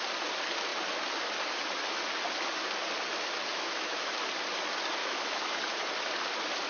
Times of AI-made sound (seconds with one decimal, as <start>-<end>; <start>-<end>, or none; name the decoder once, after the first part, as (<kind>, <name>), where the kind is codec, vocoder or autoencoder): 3.5-4.1 (autoencoder, DAC-VAE); 5.0-5.6